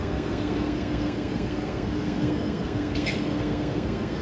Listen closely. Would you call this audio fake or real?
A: fake